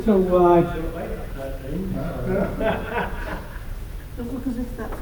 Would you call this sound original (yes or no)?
yes